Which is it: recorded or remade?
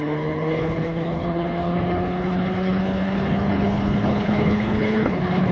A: remade